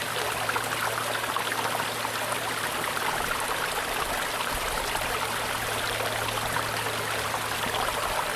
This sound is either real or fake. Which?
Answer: real